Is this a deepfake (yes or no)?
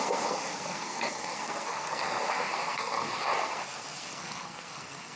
yes